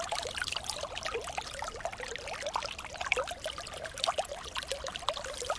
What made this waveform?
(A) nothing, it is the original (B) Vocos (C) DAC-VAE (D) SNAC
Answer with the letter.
A